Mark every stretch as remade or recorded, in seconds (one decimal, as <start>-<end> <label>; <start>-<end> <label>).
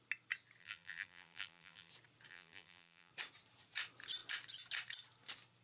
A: 0.0-0.6 recorded; 0.6-1.9 remade; 1.9-2.3 recorded; 2.3-3.1 remade; 3.1-5.6 recorded